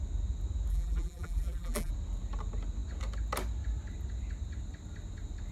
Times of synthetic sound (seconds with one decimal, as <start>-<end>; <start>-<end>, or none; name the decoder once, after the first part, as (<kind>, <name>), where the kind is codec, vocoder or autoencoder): 0.7-1.9 (vocoder, BigVGAN v2)